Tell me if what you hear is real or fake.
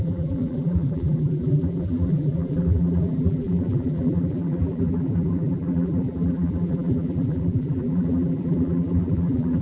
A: fake